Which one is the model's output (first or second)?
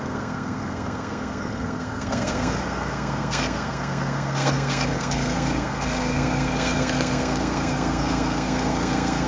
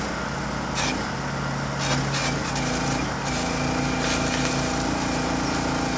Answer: first